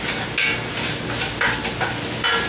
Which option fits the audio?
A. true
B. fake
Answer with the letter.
A